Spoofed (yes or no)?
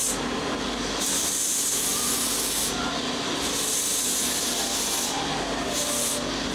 no